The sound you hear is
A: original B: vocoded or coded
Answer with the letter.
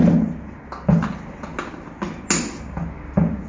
A